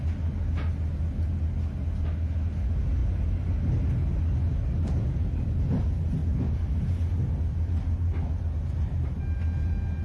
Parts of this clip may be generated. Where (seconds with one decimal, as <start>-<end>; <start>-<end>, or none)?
none